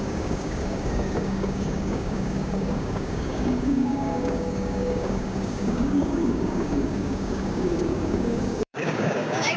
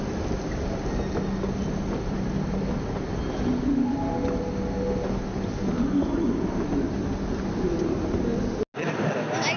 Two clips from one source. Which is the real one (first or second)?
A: second